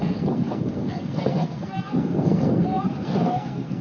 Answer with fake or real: fake